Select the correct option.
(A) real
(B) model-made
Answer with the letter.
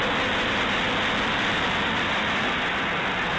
A